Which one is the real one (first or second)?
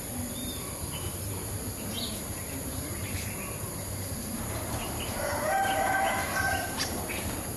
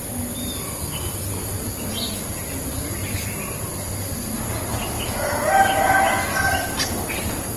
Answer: second